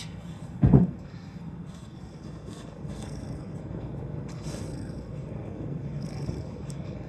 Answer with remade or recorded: remade